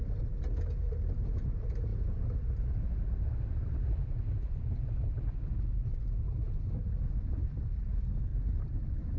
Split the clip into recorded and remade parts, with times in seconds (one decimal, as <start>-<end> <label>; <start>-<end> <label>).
0.0-1.9 recorded; 1.9-5.0 remade; 5.0-8.3 recorded; 8.3-9.2 remade